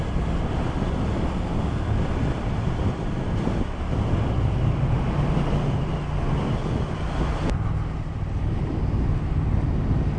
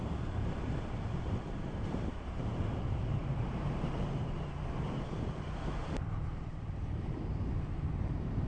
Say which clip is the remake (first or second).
second